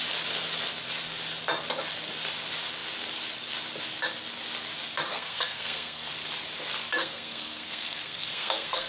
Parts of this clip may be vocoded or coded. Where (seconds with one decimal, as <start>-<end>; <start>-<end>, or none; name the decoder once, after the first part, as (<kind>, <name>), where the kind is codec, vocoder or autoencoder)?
5.1-6.1 (codec, SNAC); 7.0-8.9